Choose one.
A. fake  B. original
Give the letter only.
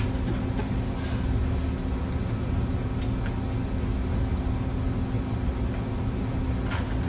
B